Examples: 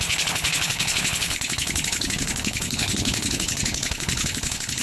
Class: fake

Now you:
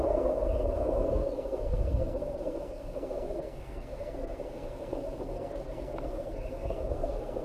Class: fake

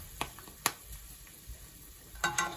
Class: real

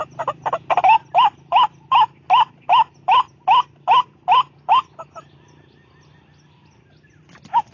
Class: real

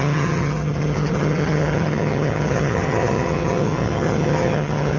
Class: fake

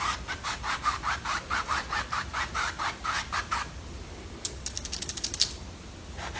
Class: fake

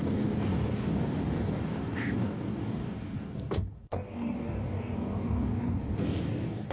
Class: fake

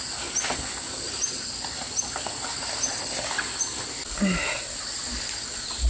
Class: real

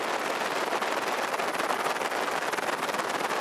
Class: real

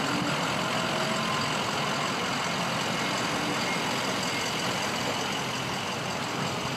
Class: real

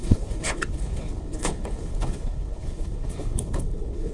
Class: fake